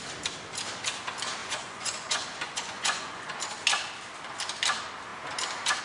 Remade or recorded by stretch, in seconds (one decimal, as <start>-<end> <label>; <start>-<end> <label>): 0.0-1.4 recorded; 1.4-3.4 remade; 3.4-5.8 recorded